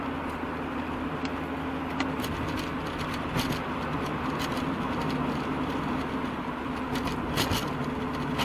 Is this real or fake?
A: real